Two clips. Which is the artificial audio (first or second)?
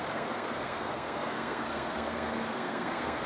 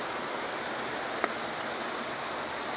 first